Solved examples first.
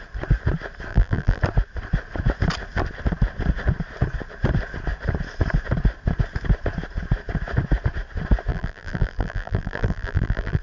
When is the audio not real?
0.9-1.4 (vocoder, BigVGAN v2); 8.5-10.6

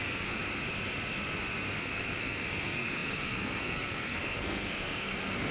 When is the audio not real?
0.0-0.4 (codec, SNAC); 1.8-5.5

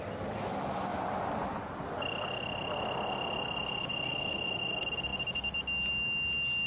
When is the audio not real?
none